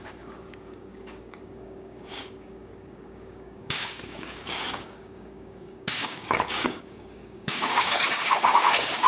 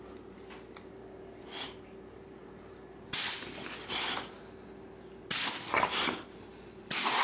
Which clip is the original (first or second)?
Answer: second